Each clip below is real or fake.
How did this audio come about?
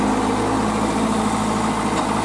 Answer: real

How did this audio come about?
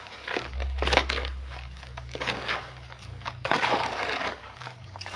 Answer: fake